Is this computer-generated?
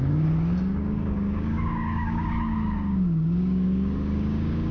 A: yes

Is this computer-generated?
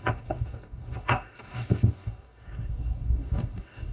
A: yes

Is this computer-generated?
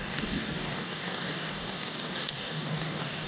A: yes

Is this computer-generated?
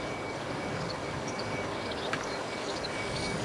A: yes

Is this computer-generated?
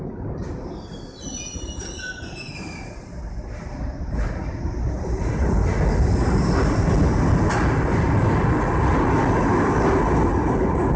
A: no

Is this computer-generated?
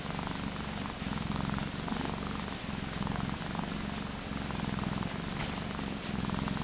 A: no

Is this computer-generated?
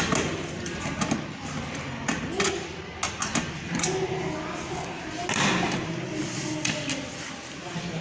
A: no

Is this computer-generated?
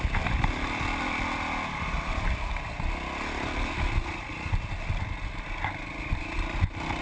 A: no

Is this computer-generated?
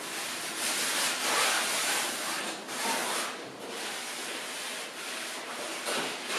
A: no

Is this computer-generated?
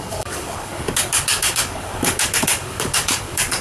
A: yes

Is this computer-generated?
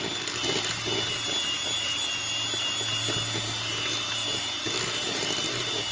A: no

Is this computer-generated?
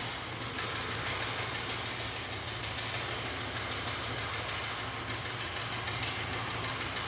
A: no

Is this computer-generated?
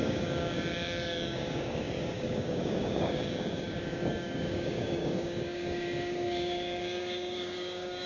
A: yes